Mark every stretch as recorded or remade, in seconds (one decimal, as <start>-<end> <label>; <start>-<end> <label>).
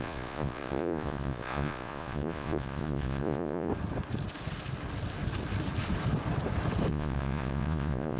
0.0-3.7 remade; 3.7-6.9 recorded; 6.9-8.2 remade